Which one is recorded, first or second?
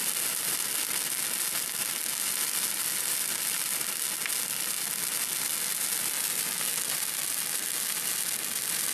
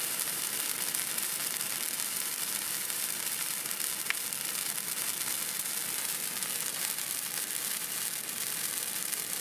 first